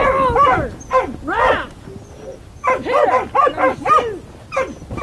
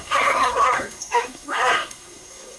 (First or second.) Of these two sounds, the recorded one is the first